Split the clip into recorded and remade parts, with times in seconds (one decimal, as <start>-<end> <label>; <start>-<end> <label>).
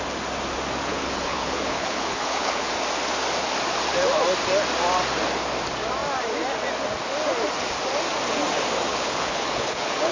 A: 0.0-0.9 recorded; 0.9-2.7 remade; 2.7-8.9 recorded; 8.9-10.1 remade